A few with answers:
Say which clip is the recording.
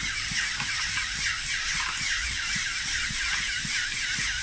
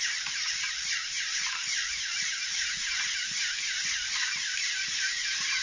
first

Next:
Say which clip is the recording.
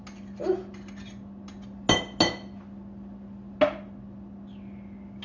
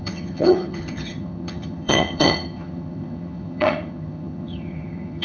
first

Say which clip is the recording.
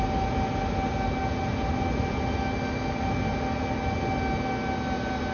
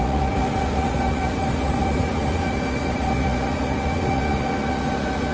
first